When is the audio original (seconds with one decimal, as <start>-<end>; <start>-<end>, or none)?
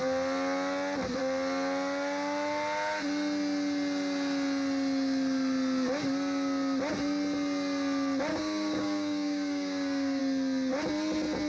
0.0-8.3; 10.2-11.5